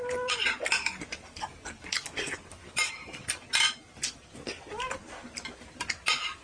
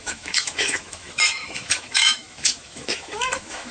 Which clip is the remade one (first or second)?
second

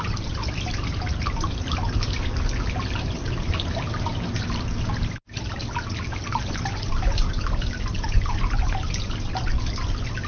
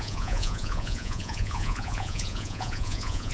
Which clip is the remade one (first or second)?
second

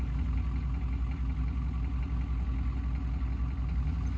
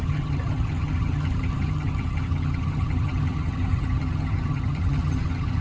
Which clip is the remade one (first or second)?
second